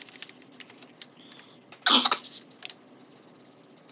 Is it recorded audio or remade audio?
recorded